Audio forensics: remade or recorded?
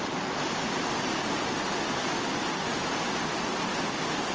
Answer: recorded